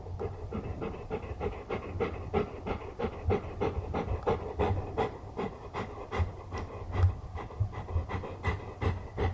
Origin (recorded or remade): recorded